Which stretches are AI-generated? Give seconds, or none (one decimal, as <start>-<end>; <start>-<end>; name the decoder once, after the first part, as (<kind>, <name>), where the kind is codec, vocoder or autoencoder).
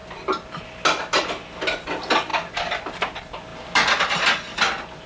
none